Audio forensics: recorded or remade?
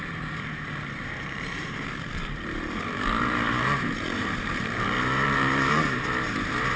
remade